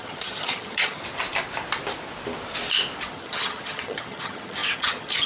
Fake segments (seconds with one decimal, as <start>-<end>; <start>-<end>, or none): 0.0-1.0; 3.1-5.3